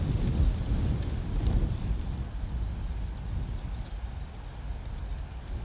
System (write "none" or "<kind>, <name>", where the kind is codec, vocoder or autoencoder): none